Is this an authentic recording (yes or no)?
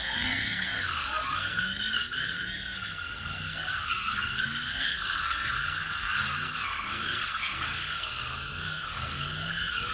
no